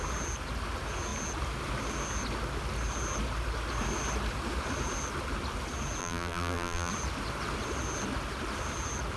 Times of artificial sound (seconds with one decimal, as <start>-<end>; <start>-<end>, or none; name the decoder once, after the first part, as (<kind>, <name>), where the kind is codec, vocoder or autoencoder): 6.0-6.9 (vocoder, BigVGAN v2)